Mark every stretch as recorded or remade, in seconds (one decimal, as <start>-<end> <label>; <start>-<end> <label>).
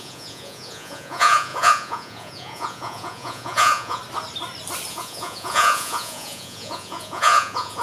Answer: 0.0-4.0 remade; 4.0-4.9 recorded; 4.9-7.8 remade